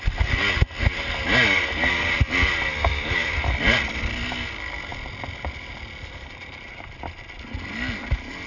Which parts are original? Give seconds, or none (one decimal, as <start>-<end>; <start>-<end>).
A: 0.0-8.5